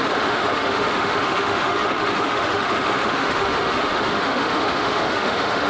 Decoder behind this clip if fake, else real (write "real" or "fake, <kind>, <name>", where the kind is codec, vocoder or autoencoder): fake, autoencoder, DAC-VAE